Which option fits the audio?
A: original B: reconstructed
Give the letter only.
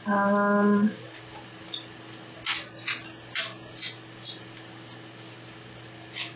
A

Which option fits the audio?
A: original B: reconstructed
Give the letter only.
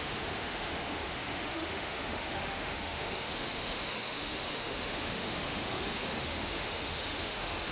B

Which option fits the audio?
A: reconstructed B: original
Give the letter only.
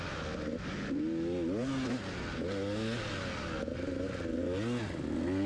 B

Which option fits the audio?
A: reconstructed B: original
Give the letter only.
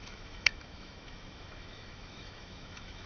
A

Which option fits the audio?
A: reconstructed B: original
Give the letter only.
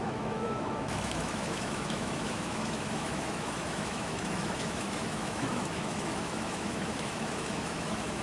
A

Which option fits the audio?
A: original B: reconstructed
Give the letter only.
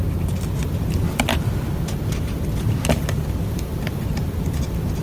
A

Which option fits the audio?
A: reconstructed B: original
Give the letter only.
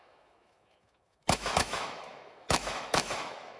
A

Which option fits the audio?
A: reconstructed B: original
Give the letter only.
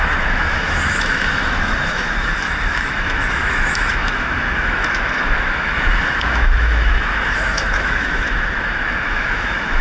A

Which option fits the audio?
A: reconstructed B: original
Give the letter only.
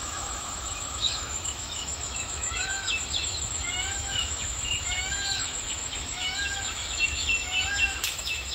A